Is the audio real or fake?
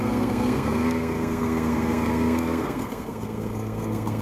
fake